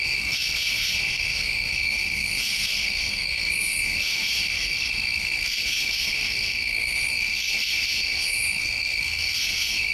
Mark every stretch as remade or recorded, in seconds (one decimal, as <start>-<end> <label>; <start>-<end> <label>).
0.0-9.9 remade